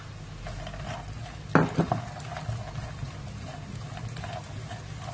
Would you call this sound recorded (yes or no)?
yes